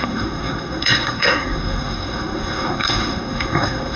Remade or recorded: remade